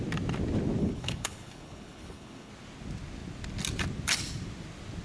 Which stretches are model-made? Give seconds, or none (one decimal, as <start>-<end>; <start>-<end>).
0.8-2.5